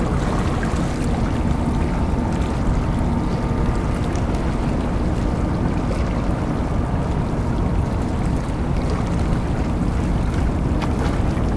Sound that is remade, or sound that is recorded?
recorded